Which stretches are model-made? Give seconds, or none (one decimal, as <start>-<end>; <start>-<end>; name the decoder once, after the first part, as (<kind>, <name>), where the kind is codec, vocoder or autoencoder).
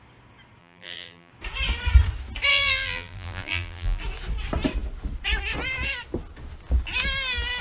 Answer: 0.6-1.3 (vocoder, BigVGAN v2); 2.5-4.0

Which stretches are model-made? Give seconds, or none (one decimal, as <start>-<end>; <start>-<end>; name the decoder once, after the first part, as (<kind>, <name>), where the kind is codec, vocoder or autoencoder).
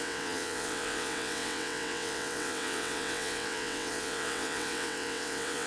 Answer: 0.0-5.7 (vocoder, WaveNeXt)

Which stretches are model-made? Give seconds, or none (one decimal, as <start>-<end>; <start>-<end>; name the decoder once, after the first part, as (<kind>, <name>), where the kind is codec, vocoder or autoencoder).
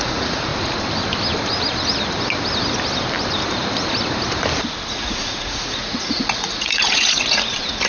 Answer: 0.0-0.5 (vocoder, Vocos); 4.9-7.9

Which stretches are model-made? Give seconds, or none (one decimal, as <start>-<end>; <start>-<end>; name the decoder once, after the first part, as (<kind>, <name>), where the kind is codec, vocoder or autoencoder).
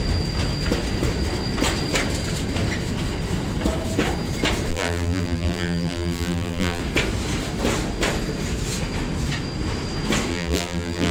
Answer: 4.7-6.8 (vocoder, BigVGAN v2); 10.3-11.1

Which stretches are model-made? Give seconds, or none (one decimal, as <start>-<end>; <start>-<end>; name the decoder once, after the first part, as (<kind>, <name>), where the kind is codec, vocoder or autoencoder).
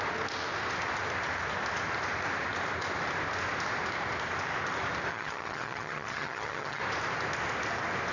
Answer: 5.1-6.8 (vocoder, HiFi-GAN)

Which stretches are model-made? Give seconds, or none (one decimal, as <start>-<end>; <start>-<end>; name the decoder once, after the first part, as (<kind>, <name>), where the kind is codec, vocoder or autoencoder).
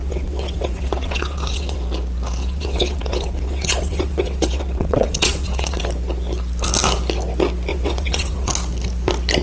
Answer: 0.0-1.8 (vocoder, WaveNeXt); 2.4-5.8; 7.7-8.5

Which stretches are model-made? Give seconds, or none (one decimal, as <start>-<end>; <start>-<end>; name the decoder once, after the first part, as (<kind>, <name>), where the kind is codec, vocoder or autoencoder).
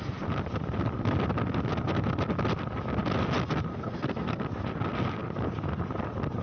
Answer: 3.7-4.4 (codec, SNAC)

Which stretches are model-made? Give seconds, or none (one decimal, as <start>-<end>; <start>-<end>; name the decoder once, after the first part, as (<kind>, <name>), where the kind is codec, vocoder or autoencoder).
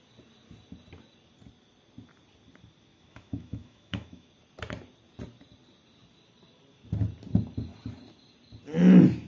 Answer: 2.9-4.3 (autoencoder, DAC-VAE)